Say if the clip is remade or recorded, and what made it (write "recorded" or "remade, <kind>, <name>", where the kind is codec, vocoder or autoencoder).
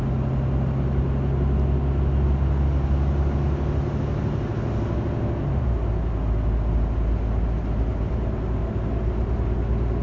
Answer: recorded